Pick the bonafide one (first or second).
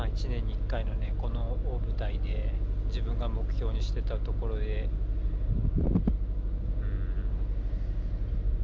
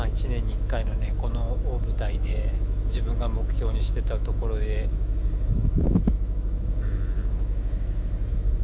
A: first